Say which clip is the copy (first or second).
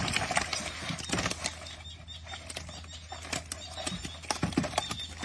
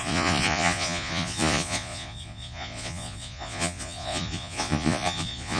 second